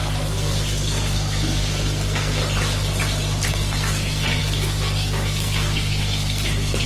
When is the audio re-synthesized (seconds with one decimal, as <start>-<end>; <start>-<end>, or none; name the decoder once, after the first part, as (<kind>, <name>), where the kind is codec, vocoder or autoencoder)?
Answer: 0.0-2.4 (codec, SNAC); 3.5-6.9